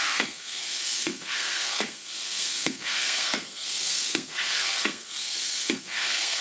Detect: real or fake fake